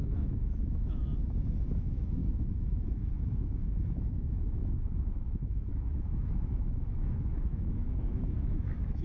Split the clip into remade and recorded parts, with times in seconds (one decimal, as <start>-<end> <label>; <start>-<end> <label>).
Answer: 0.0-1.0 remade; 1.0-1.7 recorded; 1.7-9.0 remade